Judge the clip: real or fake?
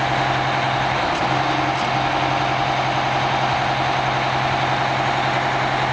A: real